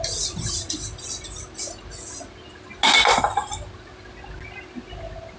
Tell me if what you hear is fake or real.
real